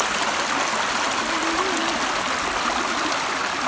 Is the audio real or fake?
real